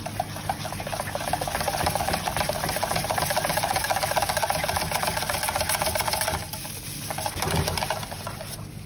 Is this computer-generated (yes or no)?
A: no